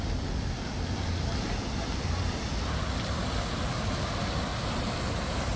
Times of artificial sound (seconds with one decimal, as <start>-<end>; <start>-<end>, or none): none